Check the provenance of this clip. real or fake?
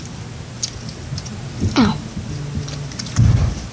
real